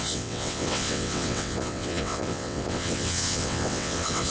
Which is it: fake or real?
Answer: fake